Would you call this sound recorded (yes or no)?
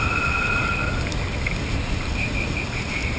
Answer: yes